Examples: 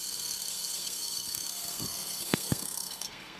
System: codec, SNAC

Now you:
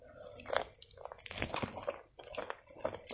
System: none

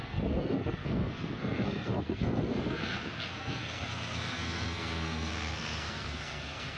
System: codec, SNAC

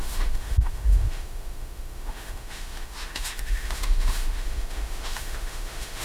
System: autoencoder, DAC-VAE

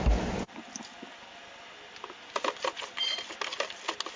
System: none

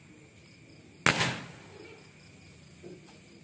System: none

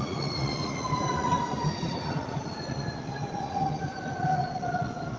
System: vocoder, Vocos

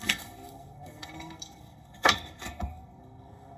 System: codec, SNAC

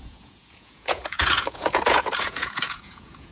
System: vocoder, Vocos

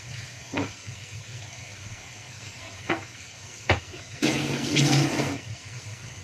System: codec, SNAC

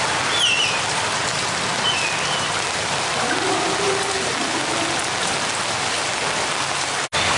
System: none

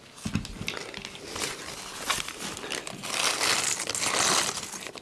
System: none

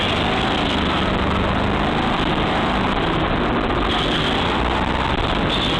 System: none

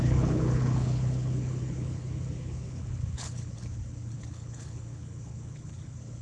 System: codec, HILCodec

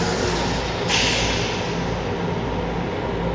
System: none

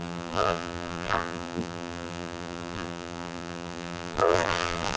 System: vocoder, BigVGAN v2